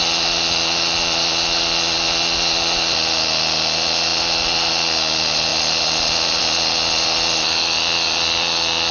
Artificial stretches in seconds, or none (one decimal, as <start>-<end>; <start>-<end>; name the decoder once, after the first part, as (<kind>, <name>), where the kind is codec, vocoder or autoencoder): none